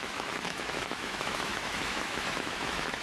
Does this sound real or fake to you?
fake